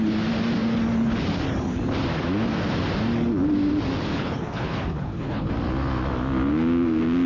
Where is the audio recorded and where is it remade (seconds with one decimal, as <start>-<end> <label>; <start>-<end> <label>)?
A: 0.0-4.1 recorded; 4.1-5.5 remade; 5.5-7.3 recorded

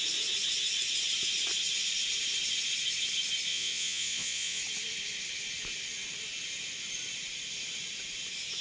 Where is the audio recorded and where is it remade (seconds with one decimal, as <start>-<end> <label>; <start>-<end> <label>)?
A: 0.0-3.5 recorded; 3.5-4.6 remade; 4.6-8.6 recorded

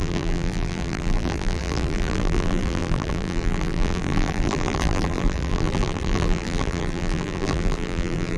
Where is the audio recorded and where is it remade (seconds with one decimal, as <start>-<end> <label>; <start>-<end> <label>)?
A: 0.0-8.4 remade

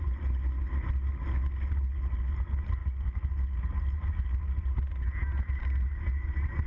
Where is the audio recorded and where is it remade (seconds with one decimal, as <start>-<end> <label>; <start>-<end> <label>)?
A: 0.0-6.7 recorded